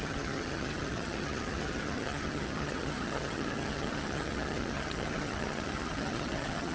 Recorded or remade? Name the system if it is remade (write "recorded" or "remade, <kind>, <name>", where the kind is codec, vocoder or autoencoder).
remade, vocoder, HiFi-GAN